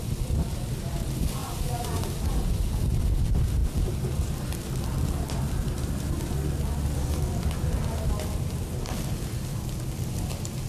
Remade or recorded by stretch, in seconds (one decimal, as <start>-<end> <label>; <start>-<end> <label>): 0.0-10.7 remade